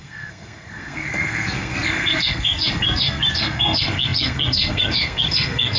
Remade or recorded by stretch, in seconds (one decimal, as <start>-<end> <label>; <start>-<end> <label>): 0.0-5.8 remade